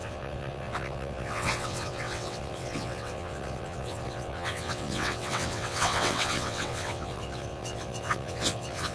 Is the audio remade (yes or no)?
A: yes